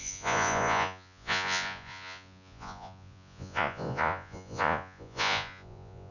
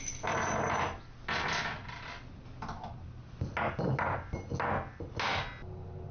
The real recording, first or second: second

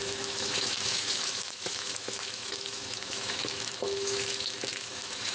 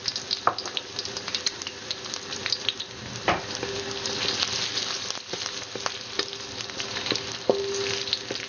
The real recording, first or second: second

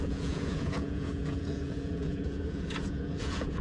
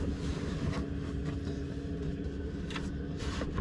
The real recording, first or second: second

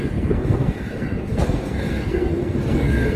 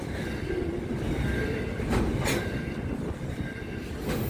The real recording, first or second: second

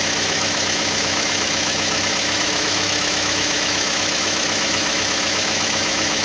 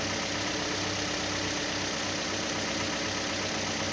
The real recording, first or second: second